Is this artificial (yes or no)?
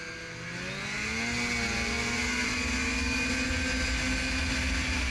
no